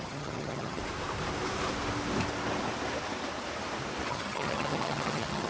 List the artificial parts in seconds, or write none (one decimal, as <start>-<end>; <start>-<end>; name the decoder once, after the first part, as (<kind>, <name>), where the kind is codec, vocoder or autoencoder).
0.0-0.8 (vocoder, HiFi-GAN); 4.1-5.5